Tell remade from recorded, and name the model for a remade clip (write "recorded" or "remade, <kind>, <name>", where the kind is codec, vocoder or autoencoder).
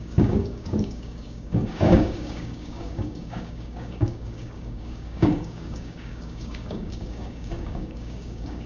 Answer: remade, codec, DAC